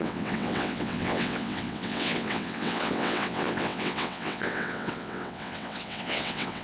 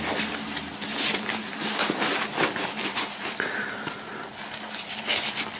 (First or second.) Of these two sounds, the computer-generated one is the first